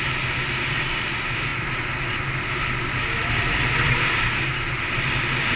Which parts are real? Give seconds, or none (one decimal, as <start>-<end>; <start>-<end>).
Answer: 0.0-5.6